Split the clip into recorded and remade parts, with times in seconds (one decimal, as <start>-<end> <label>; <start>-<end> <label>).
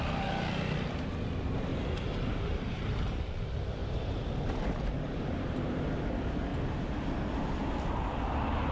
0.0-1.7 recorded; 1.7-3.2 remade; 3.2-3.8 recorded; 3.8-5.9 remade; 5.9-8.7 recorded